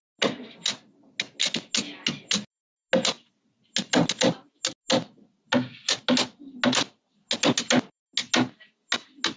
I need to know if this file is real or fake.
real